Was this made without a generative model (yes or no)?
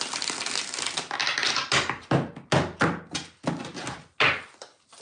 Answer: yes